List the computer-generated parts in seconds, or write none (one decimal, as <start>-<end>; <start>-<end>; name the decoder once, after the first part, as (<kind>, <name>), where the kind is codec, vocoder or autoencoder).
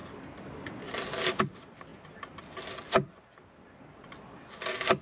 none